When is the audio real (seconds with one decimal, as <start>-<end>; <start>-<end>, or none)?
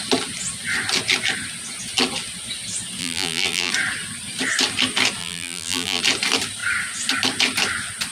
0.0-3.0; 3.7-5.2; 6.0-8.1